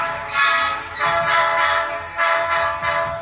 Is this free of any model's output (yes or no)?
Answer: yes